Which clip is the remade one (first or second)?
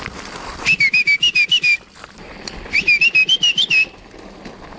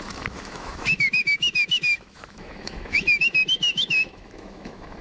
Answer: second